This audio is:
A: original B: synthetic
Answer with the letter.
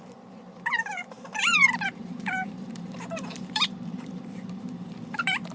B